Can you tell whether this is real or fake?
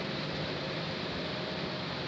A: fake